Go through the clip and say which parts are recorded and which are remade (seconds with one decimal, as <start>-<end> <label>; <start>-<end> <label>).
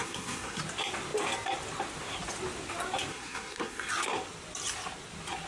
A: 0.0-0.6 remade; 0.6-3.1 recorded; 3.1-3.9 remade; 3.9-5.5 recorded